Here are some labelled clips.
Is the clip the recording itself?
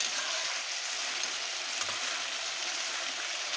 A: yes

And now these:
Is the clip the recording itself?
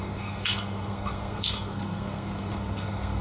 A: no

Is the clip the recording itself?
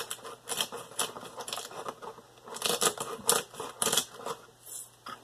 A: yes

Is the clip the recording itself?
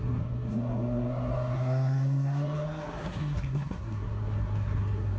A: no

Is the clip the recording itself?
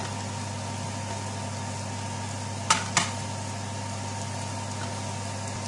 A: yes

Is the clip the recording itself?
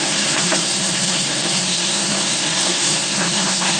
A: no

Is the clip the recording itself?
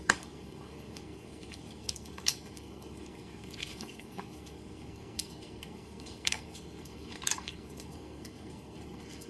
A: no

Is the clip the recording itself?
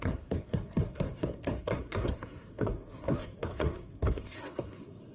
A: no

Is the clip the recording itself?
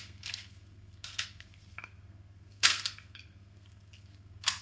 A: no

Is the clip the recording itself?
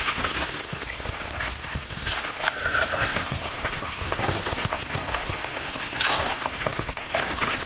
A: no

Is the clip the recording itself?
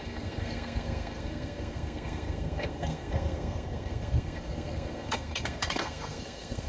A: no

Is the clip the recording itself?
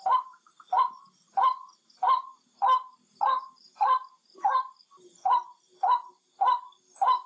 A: yes